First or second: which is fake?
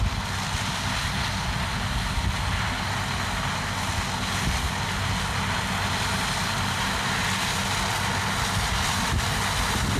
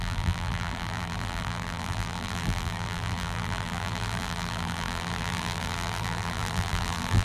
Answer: second